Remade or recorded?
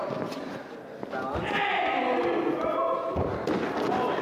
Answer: recorded